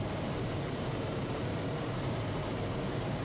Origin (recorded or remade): remade